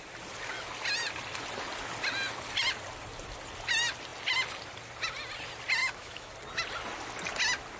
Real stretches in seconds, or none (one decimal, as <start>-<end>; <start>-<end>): 0.0-5.8; 6.3-7.8